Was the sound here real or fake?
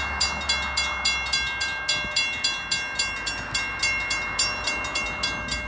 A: real